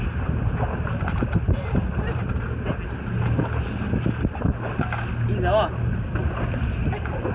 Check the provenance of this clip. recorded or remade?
recorded